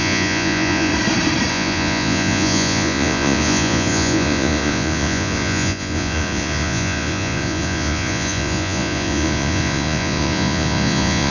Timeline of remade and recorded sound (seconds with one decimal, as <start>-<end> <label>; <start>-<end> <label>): 0.0-0.9 remade; 0.9-1.5 recorded; 1.5-11.3 remade